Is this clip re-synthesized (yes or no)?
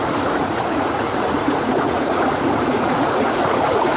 yes